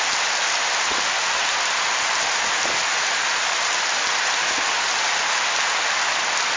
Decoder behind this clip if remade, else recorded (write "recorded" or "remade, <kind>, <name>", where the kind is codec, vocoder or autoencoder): recorded